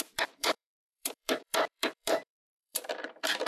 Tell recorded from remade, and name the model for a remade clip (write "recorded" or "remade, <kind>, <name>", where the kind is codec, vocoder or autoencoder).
remade, vocoder, BigVGAN v2